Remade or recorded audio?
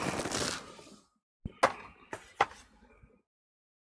recorded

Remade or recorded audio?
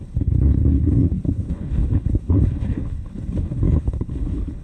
remade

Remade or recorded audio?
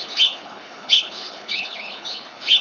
remade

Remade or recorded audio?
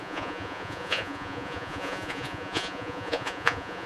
remade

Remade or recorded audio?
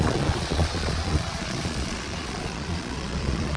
remade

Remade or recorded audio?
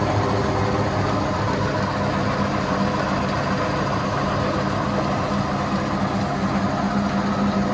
recorded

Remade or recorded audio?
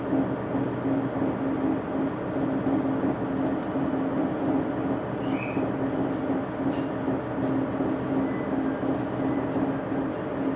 recorded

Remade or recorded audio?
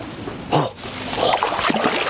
recorded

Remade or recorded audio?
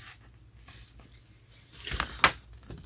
recorded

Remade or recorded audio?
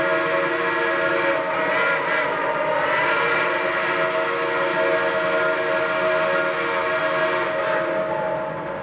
recorded